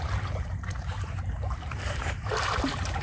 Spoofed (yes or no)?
yes